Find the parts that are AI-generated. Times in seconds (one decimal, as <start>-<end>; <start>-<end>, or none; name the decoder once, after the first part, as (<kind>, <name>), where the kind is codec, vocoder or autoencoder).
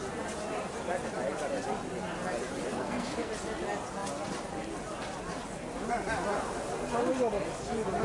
2.7-3.3 (codec, SNAC)